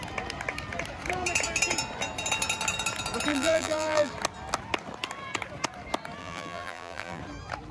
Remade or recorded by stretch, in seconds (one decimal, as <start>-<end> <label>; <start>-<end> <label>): 0.0-3.3 recorded; 3.3-4.1 remade; 4.1-6.2 recorded; 6.2-7.2 remade; 7.2-7.7 recorded